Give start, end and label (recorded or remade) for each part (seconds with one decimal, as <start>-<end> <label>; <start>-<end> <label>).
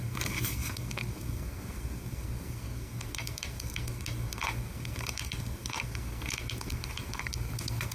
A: 0.0-7.9 remade